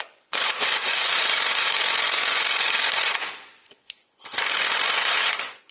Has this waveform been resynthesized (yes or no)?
yes